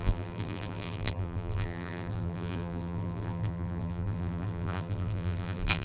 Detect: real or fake fake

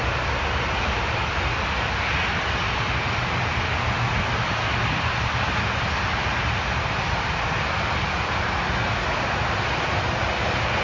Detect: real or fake real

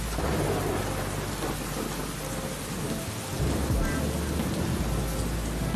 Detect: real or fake real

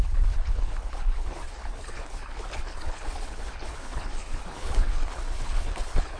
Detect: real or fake fake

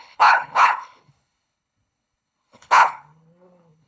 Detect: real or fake fake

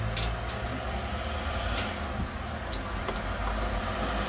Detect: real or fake real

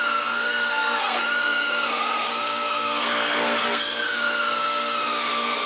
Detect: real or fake fake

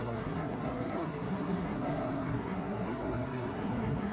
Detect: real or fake fake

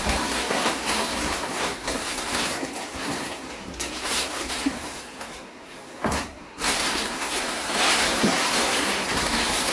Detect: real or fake fake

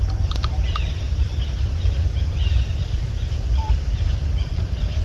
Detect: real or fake fake